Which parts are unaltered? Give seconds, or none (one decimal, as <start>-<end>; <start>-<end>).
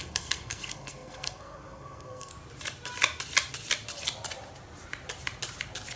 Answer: 2.3-6.0